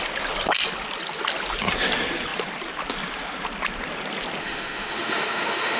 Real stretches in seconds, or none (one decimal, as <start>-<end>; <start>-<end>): 0.0-4.4